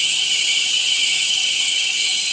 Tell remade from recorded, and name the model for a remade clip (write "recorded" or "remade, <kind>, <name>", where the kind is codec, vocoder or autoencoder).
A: remade, vocoder, HiFi-GAN